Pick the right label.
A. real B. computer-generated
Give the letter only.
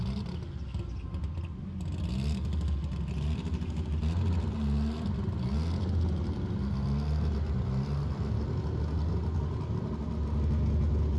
A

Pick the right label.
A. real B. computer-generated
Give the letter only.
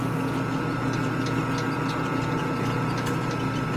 A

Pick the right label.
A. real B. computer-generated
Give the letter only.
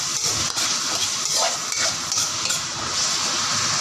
A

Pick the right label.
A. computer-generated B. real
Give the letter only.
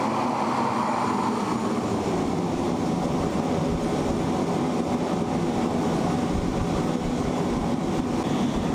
B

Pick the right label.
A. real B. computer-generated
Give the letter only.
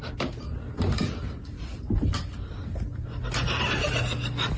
A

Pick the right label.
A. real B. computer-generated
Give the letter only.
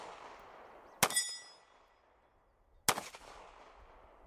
A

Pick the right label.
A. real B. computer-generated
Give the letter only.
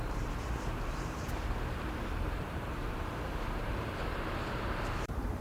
B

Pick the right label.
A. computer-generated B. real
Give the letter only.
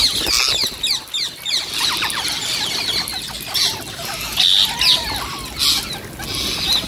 B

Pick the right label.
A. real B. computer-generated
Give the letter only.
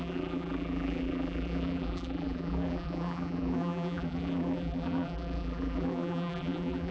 B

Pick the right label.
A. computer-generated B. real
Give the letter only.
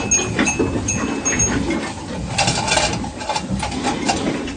B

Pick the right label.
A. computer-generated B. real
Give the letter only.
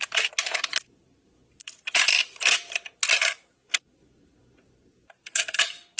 A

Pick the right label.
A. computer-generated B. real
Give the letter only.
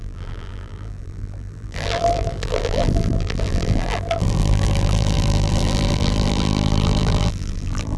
A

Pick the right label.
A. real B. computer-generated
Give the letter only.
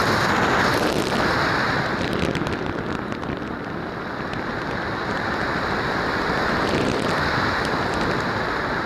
B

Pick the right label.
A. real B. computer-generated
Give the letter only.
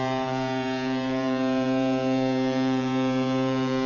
B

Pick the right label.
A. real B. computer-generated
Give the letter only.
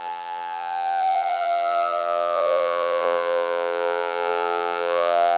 B